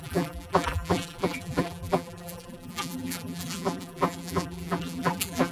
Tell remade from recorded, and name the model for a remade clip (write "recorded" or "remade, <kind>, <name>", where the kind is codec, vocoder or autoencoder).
remade, vocoder, BigVGAN v2